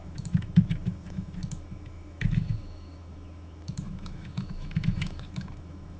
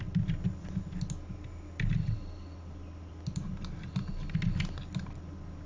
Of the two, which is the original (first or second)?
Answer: second